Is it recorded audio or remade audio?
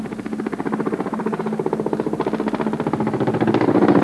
recorded